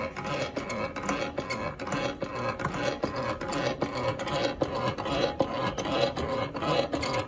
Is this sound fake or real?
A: real